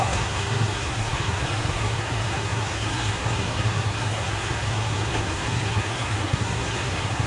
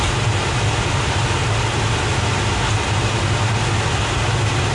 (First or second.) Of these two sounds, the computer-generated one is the first